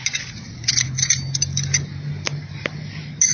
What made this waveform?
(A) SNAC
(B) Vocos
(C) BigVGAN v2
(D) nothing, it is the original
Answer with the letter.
D